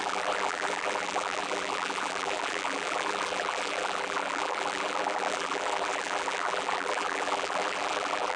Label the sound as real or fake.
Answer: fake